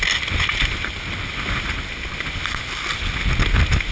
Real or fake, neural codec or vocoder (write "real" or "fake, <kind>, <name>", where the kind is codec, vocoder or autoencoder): real